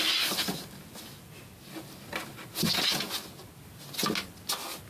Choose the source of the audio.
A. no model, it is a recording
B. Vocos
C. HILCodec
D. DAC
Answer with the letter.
A